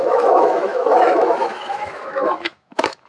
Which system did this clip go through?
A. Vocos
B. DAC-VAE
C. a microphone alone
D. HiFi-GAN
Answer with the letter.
B